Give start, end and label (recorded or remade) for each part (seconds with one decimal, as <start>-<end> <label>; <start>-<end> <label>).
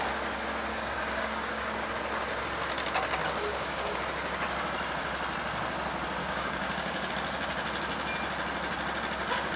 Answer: 0.0-0.7 recorded; 0.7-1.9 remade; 1.9-3.5 recorded; 3.5-4.0 remade; 4.0-6.2 recorded; 6.2-7.1 remade; 7.1-9.6 recorded